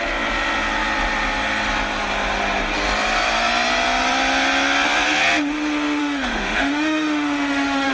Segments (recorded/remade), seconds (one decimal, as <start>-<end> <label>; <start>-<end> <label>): 0.0-6.0 recorded; 6.0-7.9 remade